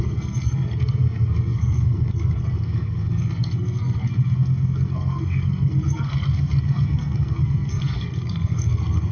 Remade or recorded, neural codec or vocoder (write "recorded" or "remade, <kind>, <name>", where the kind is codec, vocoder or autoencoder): remade, codec, SNAC